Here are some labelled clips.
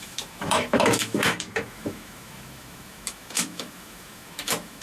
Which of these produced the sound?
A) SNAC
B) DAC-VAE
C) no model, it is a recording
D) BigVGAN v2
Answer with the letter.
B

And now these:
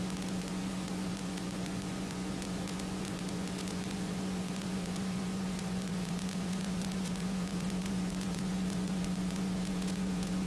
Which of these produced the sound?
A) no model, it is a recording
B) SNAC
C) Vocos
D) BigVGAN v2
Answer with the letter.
C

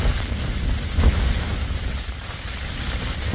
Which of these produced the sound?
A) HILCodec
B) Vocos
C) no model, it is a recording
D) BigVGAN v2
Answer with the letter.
D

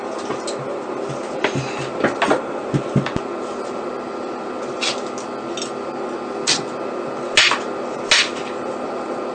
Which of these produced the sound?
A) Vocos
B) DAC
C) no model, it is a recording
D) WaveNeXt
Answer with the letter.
C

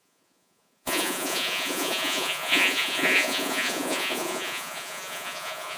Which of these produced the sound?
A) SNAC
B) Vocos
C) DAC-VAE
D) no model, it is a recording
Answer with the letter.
B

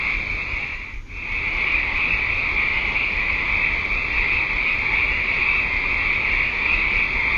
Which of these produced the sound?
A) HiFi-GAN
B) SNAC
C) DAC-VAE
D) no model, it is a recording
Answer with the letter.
D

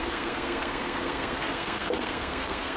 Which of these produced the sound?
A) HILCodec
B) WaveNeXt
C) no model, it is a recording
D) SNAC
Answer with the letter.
D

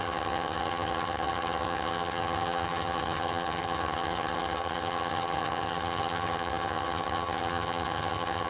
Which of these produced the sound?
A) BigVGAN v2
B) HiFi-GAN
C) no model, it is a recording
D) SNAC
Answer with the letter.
B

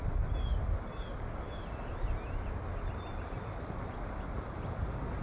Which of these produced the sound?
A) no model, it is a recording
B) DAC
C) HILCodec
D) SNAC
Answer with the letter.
A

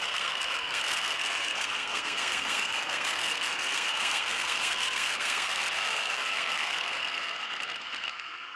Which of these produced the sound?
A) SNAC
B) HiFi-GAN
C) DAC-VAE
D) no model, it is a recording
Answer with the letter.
A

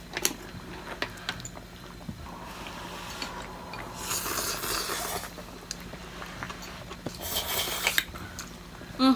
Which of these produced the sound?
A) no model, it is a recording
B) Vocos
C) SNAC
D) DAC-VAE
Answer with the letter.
A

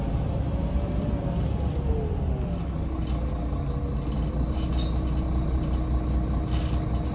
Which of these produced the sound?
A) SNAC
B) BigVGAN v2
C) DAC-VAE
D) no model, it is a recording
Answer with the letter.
D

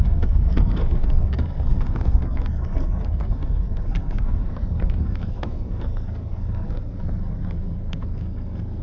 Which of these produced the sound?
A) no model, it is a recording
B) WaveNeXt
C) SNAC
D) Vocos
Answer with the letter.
C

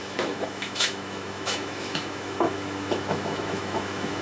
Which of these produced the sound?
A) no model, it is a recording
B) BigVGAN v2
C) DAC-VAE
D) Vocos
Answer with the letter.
C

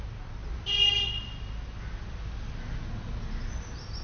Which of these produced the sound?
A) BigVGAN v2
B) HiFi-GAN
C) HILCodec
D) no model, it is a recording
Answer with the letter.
D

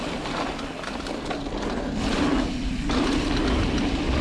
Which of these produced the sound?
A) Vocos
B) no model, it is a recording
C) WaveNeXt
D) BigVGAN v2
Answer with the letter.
B